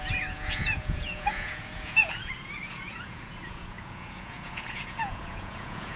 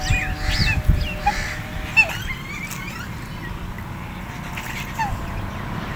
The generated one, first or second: first